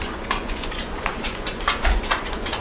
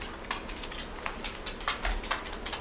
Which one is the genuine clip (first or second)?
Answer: second